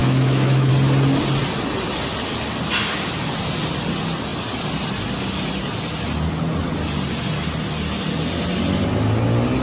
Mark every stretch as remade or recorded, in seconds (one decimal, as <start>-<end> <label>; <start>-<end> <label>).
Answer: 0.0-0.7 remade; 0.7-9.6 recorded